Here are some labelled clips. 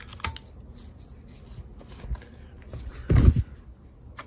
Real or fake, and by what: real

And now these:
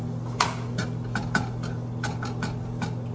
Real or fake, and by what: real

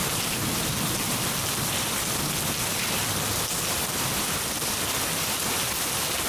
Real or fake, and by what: real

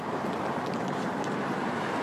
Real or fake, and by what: fake, vocoder, BigVGAN v2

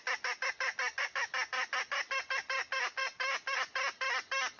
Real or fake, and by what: real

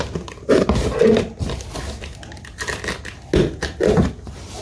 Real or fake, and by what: real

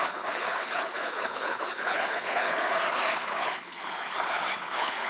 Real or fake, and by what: fake, codec, HILCodec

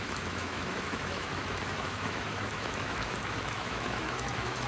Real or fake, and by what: fake, autoencoder, DAC-VAE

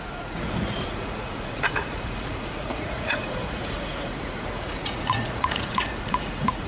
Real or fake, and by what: fake, vocoder, Vocos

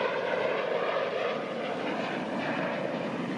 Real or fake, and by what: real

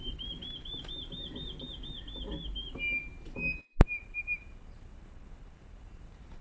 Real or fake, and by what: real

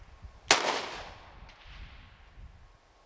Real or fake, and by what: real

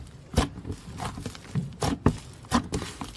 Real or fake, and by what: real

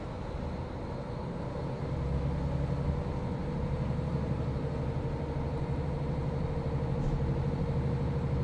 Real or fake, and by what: real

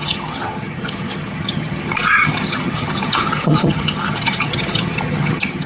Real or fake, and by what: fake, vocoder, HiFi-GAN